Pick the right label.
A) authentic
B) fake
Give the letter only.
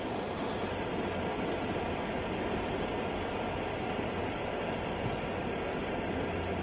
A